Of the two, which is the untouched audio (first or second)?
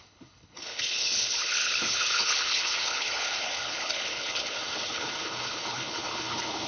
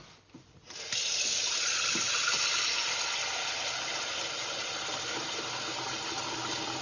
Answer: second